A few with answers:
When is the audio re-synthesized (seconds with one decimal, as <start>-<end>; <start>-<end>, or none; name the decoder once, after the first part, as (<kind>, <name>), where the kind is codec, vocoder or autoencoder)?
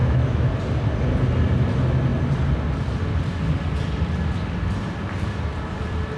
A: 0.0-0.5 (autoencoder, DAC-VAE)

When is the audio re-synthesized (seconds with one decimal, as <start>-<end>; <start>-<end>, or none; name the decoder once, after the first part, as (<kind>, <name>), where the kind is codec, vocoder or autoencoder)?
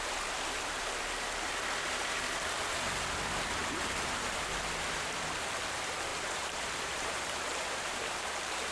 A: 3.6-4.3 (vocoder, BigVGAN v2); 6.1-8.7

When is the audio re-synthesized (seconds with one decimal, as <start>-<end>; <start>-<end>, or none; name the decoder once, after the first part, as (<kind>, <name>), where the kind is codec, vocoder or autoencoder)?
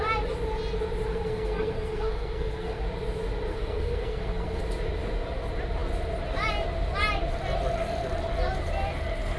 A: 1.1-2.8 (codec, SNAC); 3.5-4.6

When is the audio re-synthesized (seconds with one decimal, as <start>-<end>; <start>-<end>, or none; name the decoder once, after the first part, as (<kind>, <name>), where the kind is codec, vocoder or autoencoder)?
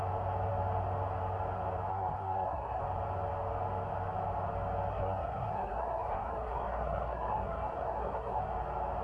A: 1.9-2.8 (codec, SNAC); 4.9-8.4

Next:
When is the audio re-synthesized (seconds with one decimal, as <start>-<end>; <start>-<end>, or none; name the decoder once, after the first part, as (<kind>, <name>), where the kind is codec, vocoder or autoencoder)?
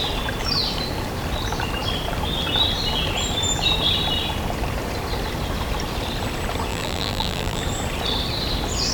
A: 6.7-7.6 (vocoder, BigVGAN v2)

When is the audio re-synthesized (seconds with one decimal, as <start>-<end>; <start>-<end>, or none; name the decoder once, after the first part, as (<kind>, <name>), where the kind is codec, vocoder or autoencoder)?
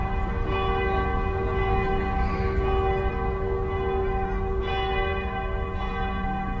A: none